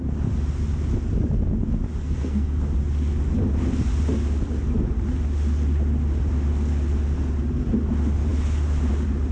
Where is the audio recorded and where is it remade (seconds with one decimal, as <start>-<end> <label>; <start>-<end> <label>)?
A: 0.0-2.0 recorded; 2.0-2.6 remade; 2.6-9.3 recorded